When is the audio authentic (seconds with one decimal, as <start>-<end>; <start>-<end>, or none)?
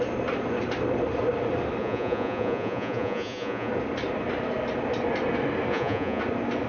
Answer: 0.0-1.8; 3.7-5.7; 6.2-6.7